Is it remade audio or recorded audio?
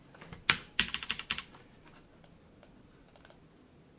recorded